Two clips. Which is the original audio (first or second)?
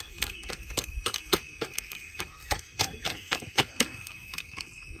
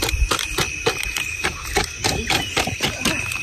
second